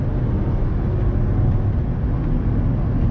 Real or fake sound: real